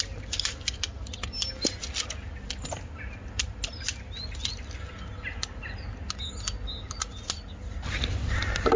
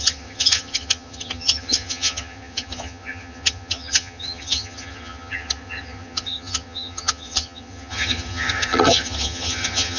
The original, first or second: first